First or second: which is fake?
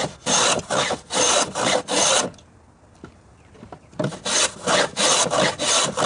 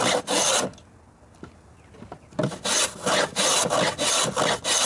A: first